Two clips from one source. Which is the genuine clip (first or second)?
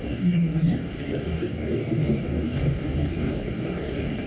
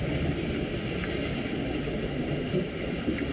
second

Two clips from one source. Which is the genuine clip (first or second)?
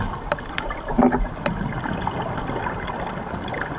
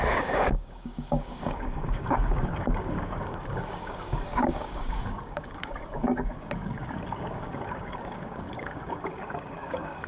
first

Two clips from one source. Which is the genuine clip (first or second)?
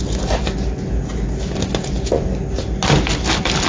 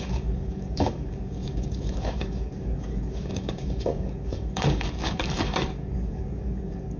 first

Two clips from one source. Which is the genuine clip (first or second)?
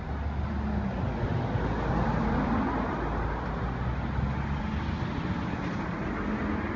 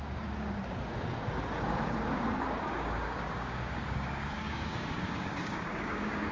first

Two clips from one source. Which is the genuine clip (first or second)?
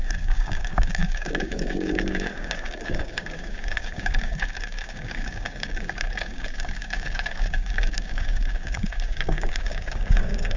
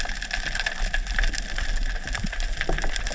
second